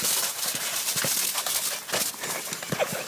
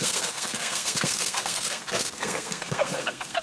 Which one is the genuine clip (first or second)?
first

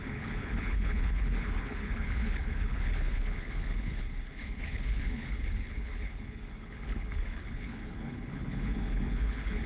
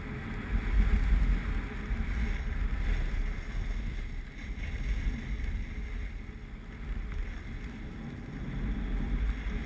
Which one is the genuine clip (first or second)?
second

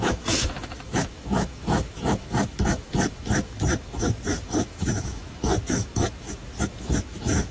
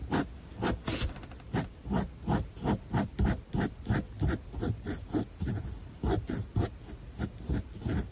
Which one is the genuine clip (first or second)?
second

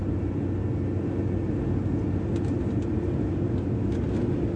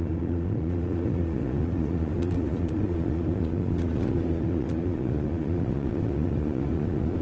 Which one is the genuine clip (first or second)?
first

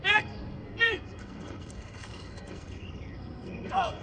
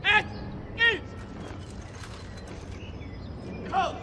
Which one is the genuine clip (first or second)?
second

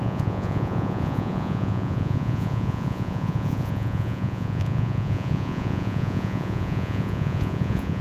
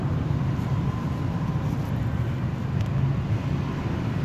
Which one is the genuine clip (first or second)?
second